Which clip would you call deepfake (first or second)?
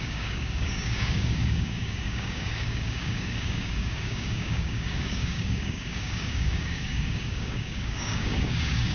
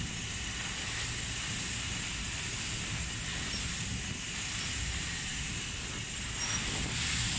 first